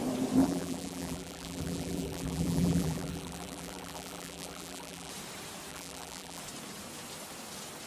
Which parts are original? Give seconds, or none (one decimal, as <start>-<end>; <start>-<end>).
0.0-0.4; 5.1-5.7; 6.4-7.9